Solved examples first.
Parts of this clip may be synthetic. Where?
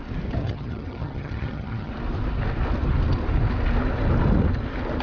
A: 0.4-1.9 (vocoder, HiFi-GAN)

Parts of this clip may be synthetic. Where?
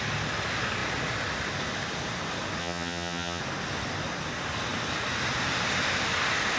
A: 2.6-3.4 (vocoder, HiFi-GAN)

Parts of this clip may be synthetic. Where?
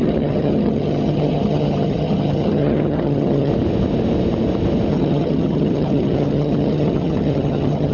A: 0.0-3.5 (vocoder, HiFi-GAN); 4.9-7.9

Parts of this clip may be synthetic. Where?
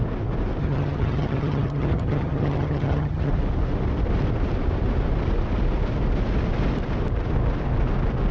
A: 0.6-3.3 (vocoder, HiFi-GAN)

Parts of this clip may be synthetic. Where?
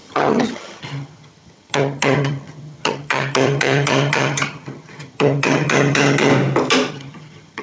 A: 0.0-6.3 (vocoder, HiFi-GAN); 6.9-7.6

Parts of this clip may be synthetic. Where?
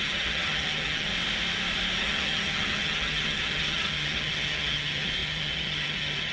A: 0.0-1.1 (vocoder, HiFi-GAN); 2.0-6.3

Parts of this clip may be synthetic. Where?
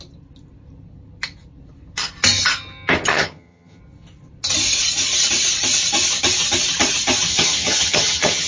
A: 3.1-3.8 (vocoder, HiFi-GAN); 7.3-8.5